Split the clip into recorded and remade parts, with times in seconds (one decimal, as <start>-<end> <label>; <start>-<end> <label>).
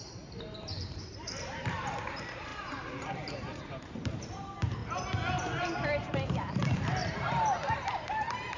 0.0-4.8 remade; 4.8-5.4 recorded; 5.4-8.6 remade